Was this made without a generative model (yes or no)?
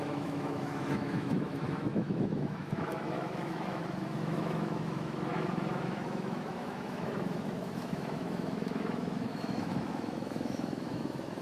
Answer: no